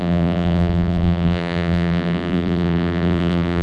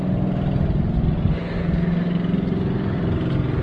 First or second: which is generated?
first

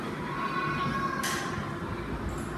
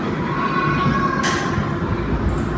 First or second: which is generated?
second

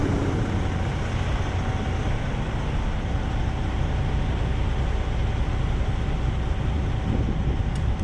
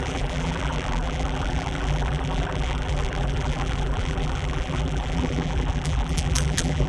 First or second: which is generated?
second